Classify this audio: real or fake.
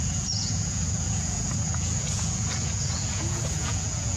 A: fake